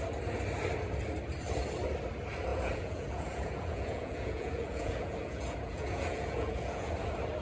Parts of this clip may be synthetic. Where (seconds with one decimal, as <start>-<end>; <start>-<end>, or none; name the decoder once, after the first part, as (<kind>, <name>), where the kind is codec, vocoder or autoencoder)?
2.5-6.9 (vocoder, Vocos)

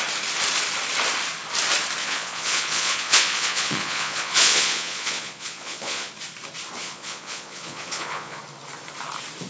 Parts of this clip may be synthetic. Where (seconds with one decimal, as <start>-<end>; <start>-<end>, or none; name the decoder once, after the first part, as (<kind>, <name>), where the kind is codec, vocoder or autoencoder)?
2.0-6.1 (vocoder, Vocos); 6.8-8.4

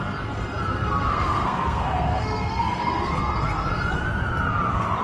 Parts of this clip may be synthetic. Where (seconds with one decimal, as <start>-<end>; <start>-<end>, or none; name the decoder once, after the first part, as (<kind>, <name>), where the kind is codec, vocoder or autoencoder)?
0.7-3.7 (codec, SNAC)

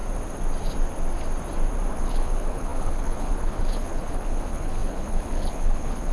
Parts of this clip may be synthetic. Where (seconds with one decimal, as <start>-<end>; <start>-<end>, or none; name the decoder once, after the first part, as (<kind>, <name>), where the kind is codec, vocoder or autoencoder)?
1.9-6.1 (codec, HILCodec)

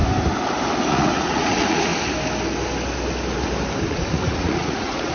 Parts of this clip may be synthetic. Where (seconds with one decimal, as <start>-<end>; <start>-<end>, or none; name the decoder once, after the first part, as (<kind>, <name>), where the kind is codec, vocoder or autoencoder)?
0.9-1.9 (vocoder, Vocos); 3.9-5.1

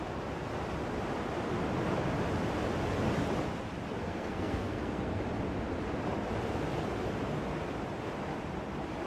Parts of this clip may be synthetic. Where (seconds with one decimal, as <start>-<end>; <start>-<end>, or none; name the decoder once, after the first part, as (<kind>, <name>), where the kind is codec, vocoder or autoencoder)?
4.0-5.2 (codec, SNAC)

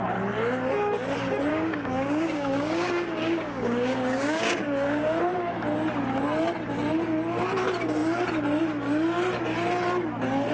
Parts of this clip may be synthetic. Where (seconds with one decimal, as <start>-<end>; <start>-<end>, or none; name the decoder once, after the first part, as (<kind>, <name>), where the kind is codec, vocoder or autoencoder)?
1.5-5.2 (codec, DAC)

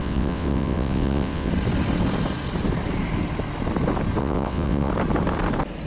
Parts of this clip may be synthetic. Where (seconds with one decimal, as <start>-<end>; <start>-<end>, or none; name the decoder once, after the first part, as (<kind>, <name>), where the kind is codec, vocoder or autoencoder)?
0.0-1.5 (vocoder, WaveNeXt); 4.2-4.9